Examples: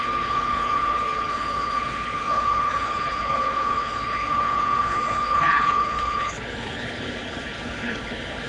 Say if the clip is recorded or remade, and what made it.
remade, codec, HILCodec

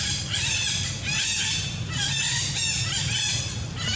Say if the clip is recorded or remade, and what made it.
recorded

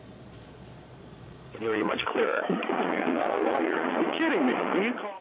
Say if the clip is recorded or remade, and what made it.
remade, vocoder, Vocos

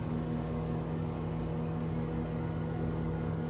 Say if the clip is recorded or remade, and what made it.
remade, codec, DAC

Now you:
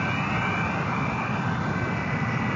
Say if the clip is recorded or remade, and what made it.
recorded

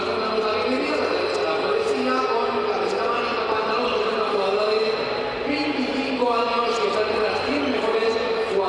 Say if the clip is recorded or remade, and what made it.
recorded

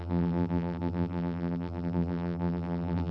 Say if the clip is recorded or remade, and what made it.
remade, vocoder, BigVGAN v2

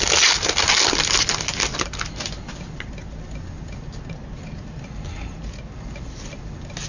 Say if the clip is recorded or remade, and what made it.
recorded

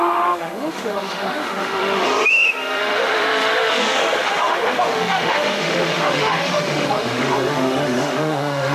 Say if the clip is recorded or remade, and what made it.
remade, autoencoder, DAC-VAE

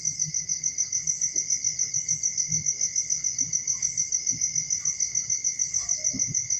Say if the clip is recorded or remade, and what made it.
recorded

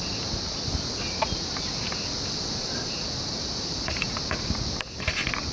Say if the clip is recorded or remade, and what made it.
recorded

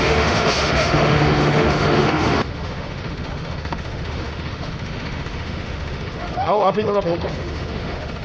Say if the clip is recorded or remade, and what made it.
remade, autoencoder, DAC-VAE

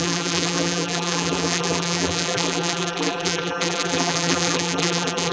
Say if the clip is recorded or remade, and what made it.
remade, vocoder, BigVGAN v2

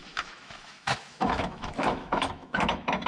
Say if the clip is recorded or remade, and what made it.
remade, autoencoder, DAC-VAE